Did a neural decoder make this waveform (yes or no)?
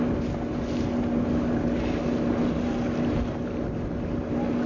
no